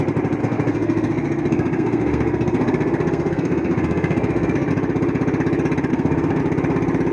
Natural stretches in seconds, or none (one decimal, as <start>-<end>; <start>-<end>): 0.0-0.4; 4.7-5.9; 6.4-7.1